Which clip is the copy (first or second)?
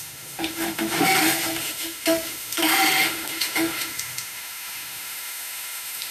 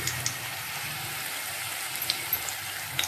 first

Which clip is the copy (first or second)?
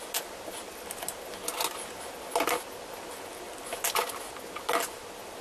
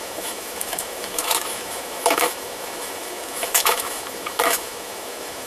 second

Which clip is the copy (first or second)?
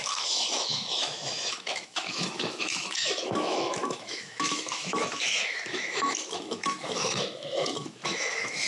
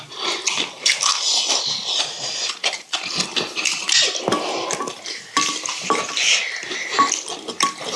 first